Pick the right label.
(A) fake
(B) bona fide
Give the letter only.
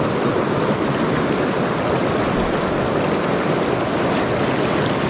B